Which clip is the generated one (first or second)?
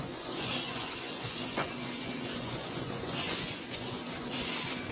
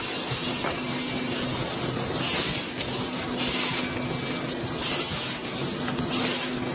first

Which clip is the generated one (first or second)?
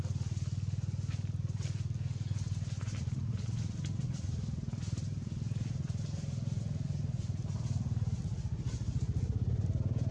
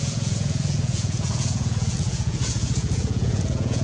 second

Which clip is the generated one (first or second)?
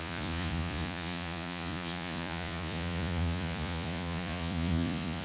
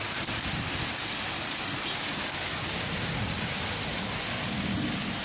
first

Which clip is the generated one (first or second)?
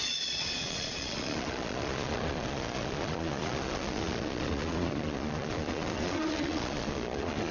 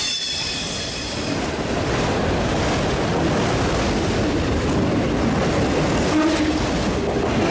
first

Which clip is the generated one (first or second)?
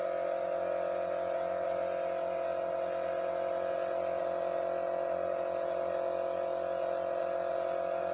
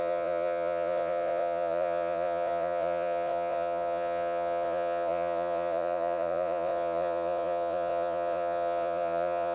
second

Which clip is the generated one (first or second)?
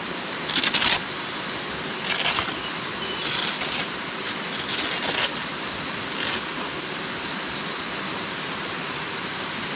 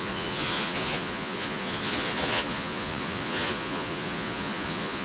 second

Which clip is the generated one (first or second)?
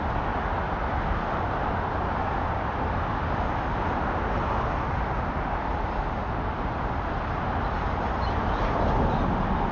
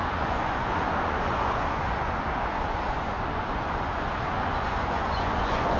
second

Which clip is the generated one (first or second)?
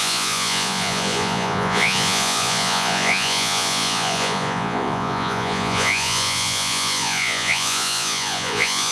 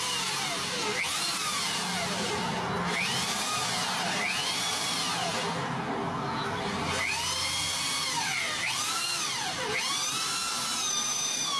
first